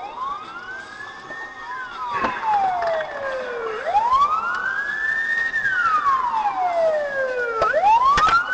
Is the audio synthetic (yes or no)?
no